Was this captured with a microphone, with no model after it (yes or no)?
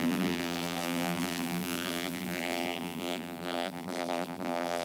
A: no